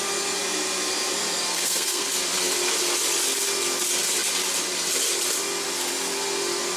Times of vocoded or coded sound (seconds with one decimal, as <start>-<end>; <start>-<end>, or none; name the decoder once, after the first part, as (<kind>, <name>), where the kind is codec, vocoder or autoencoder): 1.5-2.1 (codec, SNAC)